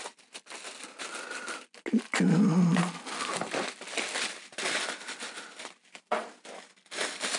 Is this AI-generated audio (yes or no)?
no